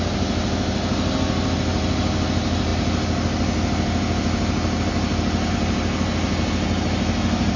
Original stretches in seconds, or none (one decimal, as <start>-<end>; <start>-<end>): 0.0-7.6